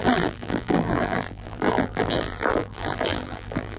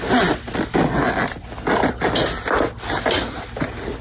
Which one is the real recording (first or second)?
second